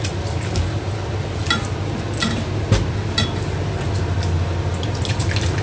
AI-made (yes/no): no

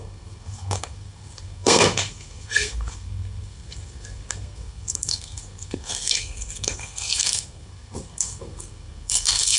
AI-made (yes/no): yes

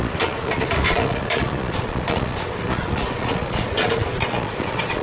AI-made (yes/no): yes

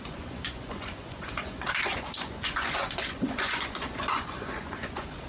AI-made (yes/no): yes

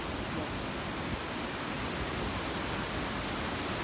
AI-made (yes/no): no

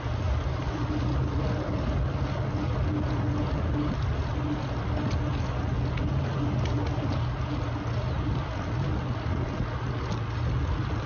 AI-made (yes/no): no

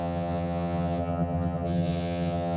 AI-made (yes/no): yes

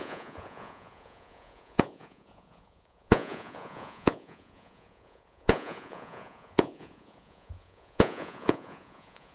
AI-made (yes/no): yes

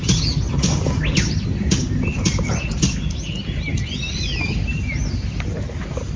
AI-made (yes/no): no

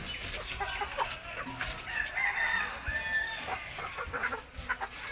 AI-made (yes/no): no